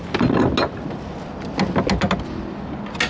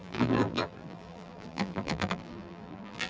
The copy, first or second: second